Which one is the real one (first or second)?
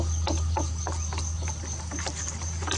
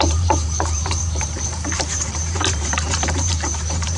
first